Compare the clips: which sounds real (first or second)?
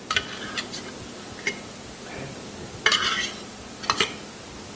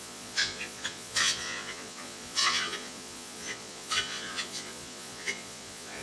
first